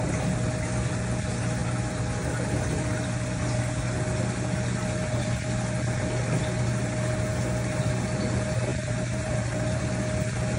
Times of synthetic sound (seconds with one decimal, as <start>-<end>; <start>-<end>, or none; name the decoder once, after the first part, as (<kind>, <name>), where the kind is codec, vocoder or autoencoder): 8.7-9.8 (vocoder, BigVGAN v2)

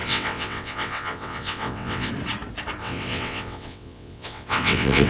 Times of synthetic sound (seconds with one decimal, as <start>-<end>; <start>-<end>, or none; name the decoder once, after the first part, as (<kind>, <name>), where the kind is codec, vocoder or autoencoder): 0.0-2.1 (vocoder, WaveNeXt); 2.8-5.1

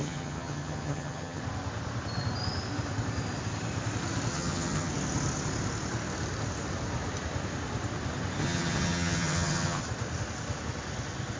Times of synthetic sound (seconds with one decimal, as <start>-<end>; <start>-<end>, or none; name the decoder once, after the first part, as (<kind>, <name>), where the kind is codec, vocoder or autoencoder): 0.0-1.4 (vocoder, HiFi-GAN); 4.3-4.9; 8.4-9.8

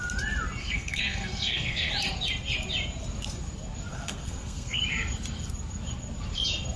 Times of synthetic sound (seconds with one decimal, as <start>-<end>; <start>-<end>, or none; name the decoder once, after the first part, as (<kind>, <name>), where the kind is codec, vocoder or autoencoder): 0.6-1.9 (codec, SNAC); 3.9-4.8